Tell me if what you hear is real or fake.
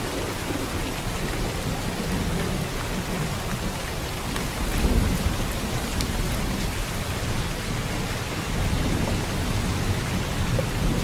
real